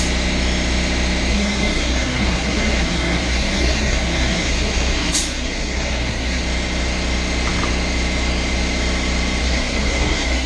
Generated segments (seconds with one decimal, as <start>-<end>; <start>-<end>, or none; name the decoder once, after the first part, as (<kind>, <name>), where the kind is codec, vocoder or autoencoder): 1.3-6.4 (codec, SNAC); 9.4-10.5